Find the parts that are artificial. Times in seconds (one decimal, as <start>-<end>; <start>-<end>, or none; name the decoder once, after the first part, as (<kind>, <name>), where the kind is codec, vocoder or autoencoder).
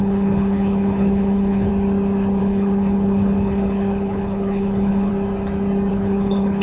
0.0-1.7 (codec, HILCodec); 2.4-5.1; 5.9-6.6